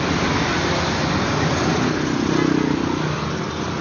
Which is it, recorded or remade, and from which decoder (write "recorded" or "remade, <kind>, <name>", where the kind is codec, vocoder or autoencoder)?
recorded